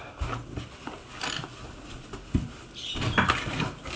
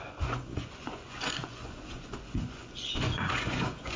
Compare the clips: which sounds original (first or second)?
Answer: first